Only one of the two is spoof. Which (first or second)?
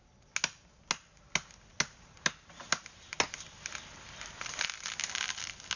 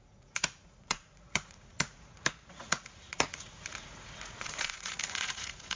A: second